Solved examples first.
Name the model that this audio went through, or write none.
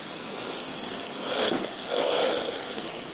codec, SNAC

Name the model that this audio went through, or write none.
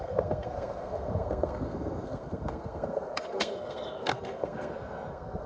codec, SNAC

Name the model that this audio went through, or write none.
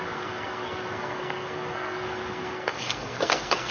codec, SNAC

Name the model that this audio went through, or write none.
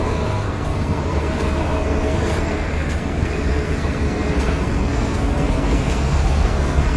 codec, SNAC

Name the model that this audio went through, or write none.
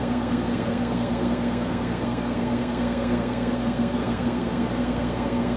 codec, SNAC